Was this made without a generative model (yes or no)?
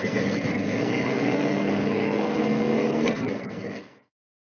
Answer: no